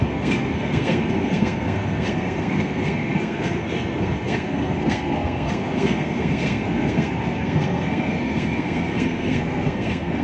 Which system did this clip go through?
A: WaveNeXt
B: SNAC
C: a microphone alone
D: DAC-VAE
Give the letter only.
B